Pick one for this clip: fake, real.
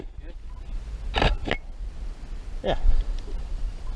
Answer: real